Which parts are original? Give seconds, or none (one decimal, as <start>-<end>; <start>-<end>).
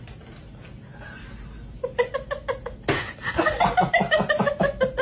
0.0-5.0